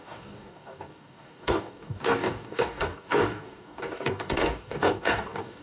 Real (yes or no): no